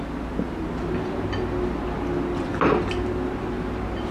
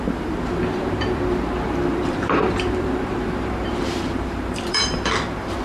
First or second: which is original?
first